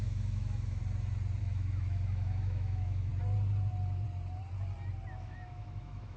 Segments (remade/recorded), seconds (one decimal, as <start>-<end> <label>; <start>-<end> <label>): 0.0-0.8 remade; 0.8-1.4 recorded; 1.4-3.1 remade; 3.1-5.1 recorded; 5.1-6.2 remade